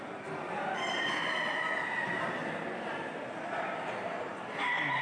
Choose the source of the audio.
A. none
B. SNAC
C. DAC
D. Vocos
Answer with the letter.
A